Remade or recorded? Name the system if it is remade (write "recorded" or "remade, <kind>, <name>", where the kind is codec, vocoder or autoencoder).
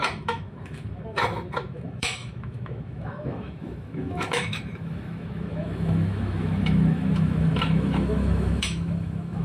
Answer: remade, autoencoder, DAC-VAE